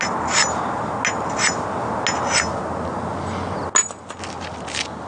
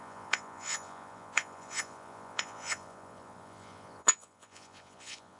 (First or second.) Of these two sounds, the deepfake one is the second